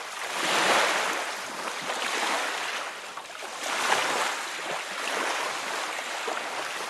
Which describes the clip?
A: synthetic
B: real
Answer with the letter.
B